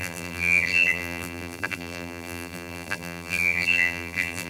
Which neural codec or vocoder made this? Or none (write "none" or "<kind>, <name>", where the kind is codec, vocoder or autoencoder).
vocoder, BigVGAN v2